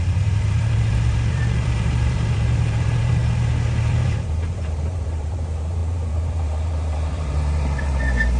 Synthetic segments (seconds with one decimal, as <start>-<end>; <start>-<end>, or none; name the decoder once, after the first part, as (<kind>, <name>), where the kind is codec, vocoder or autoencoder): 0.0-3.2 (vocoder, BigVGAN v2); 3.9-8.4